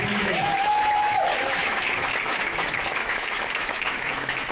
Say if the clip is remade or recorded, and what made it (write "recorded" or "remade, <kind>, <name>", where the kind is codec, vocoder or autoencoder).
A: remade, autoencoder, DAC-VAE